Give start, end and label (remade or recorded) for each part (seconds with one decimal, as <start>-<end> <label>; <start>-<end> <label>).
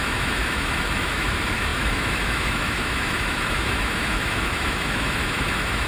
0.0-5.9 remade